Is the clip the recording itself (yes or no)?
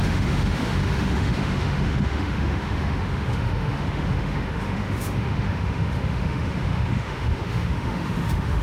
no